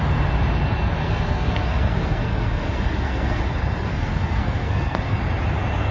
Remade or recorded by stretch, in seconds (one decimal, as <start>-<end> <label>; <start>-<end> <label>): 0.0-1.0 recorded; 1.0-3.4 remade; 3.4-3.8 recorded; 3.8-5.2 remade; 5.2-5.9 recorded